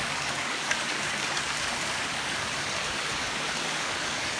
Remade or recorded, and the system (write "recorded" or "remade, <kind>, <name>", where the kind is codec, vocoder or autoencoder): remade, codec, DAC